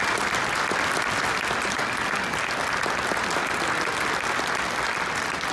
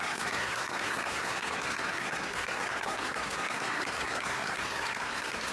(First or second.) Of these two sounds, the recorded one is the first